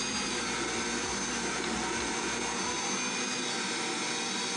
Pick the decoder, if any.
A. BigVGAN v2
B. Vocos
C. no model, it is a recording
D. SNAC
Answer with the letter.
C